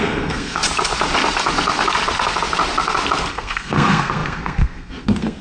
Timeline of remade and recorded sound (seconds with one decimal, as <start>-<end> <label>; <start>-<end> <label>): 0.0-0.6 remade; 0.6-3.3 recorded; 3.3-5.4 remade